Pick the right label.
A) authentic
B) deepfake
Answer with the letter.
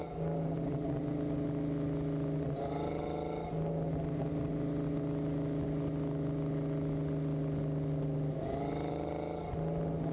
A